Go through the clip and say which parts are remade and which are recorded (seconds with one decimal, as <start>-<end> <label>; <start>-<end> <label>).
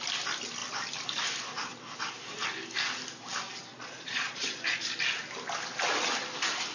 0.0-3.7 recorded; 3.7-4.6 remade; 4.6-6.7 recorded